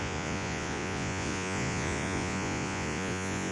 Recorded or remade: remade